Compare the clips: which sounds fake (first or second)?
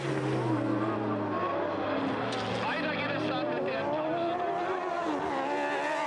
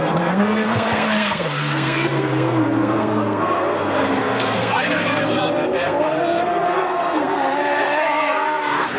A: second